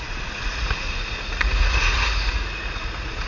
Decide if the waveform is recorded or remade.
remade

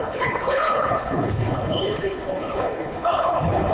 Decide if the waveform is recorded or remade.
remade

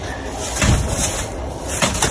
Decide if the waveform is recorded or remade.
recorded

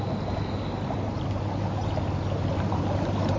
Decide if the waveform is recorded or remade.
recorded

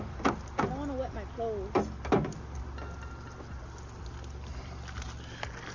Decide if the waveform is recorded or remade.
recorded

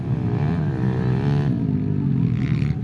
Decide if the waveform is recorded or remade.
recorded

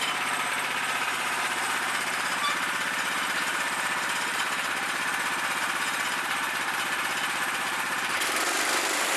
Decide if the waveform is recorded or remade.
remade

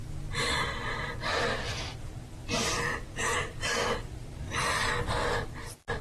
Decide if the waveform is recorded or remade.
recorded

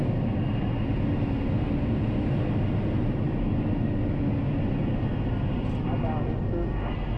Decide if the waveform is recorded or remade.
recorded